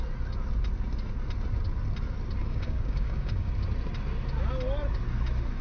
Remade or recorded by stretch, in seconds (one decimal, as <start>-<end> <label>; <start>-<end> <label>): 0.0-2.4 recorded; 2.4-3.5 remade; 3.5-5.6 recorded